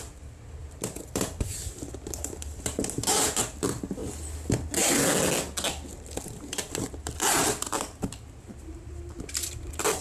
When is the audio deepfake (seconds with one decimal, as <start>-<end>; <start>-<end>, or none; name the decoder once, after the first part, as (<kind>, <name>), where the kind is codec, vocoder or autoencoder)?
0.0-4.0 (vocoder, BigVGAN v2); 5.7-10.0

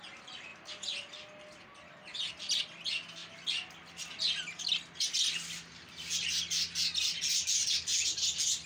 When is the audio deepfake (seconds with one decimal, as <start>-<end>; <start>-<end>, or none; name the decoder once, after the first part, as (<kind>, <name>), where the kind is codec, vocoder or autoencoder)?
none

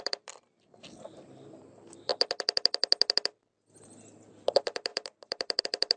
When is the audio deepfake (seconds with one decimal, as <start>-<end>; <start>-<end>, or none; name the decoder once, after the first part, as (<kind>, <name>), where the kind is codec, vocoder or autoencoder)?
0.0-2.1 (vocoder, BigVGAN v2); 4.3-6.0

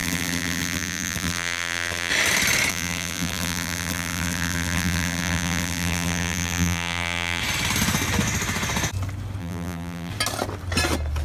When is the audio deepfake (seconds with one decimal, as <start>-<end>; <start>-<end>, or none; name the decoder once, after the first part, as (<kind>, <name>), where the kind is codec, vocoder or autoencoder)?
0.0-2.1 (vocoder, BigVGAN v2); 2.7-7.4; 9.4-10.1

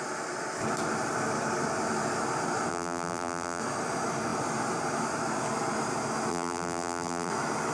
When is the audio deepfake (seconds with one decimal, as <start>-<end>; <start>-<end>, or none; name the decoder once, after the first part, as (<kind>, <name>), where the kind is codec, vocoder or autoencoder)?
2.7-3.6 (vocoder, BigVGAN v2); 6.3-7.3

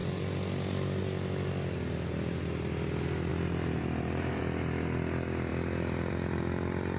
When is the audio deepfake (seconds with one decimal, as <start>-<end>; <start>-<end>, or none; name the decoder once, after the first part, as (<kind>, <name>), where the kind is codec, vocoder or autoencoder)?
3.3-4.4 (vocoder, BigVGAN v2)